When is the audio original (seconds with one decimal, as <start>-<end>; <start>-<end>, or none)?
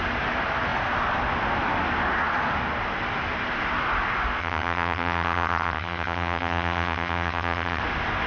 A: 0.0-4.4; 7.8-8.3